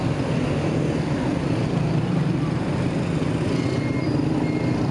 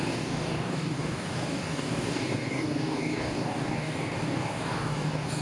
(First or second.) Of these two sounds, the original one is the first